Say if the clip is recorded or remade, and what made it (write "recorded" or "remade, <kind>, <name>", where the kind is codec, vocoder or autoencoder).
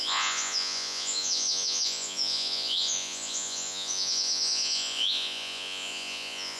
remade, vocoder, Vocos